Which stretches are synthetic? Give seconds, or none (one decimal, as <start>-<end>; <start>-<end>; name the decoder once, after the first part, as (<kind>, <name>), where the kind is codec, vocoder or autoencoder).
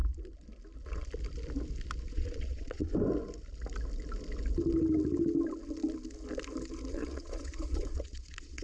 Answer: 2.1-2.8 (vocoder, Vocos); 6.9-8.6